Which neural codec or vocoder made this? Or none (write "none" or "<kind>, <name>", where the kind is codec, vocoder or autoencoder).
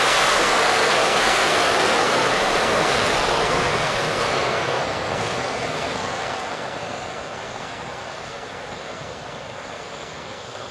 codec, SNAC